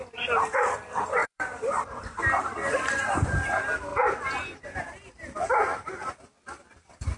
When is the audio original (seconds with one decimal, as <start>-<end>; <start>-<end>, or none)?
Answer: 0.0-1.2; 2.2-3.9; 4.8-7.2